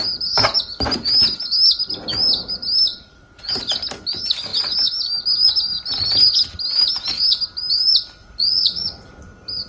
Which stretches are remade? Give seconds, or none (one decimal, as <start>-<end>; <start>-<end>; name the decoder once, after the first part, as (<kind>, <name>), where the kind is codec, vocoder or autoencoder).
2.9-3.5 (vocoder, Vocos); 8.2-9.2